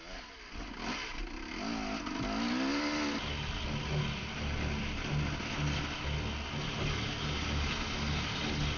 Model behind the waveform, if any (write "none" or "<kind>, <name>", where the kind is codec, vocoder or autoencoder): none